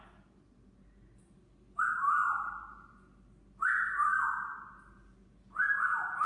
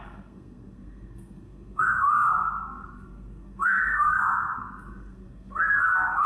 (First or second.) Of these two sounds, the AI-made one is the second